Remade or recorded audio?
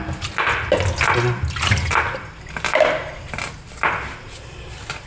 recorded